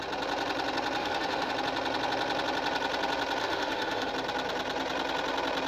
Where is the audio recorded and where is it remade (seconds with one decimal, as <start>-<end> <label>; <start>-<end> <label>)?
0.0-1.0 recorded; 1.0-1.5 remade; 1.5-3.4 recorded; 3.4-4.1 remade; 4.1-5.7 recorded